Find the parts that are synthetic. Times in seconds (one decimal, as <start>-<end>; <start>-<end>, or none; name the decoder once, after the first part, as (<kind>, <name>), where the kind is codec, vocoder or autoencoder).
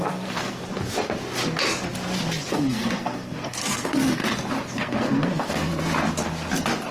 0.0-0.6 (codec, SNAC); 2.5-4.2; 4.7-5.7